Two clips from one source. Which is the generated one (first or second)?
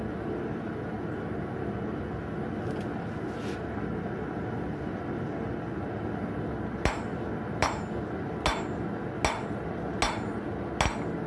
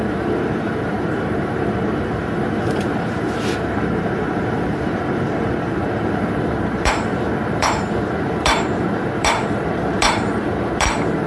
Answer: second